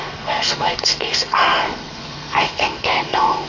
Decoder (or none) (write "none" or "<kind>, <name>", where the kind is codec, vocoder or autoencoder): codec, SNAC